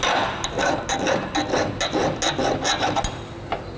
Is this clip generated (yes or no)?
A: no